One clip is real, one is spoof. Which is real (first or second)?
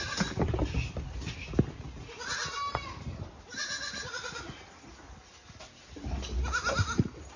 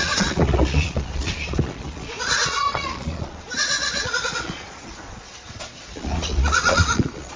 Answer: first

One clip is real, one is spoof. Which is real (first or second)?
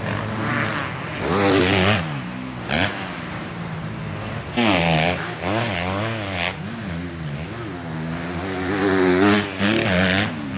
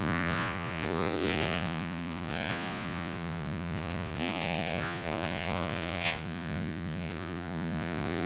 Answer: first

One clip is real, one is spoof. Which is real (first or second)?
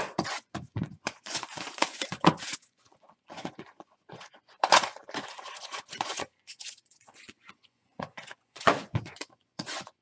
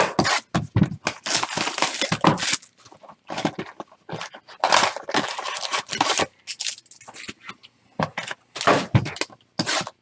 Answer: second